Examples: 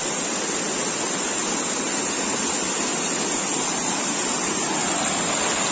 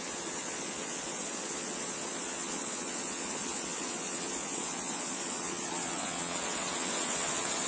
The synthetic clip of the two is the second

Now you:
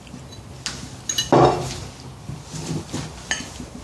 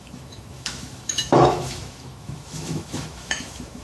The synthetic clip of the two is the second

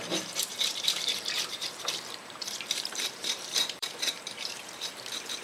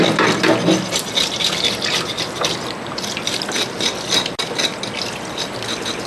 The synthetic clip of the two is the first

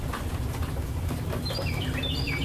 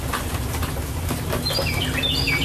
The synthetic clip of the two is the first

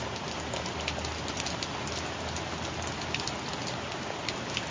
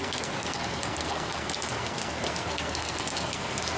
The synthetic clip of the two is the second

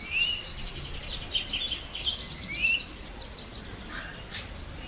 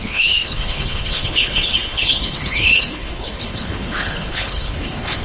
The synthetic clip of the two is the second